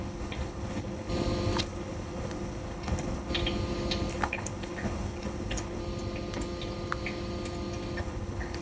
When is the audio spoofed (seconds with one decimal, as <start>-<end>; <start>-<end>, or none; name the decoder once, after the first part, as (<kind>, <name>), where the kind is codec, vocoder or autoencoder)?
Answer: 0.0-1.1 (codec, HILCodec); 1.6-3.3; 4.1-5.8; 8.0-8.6